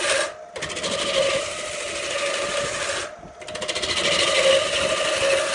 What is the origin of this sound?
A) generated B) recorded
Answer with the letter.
B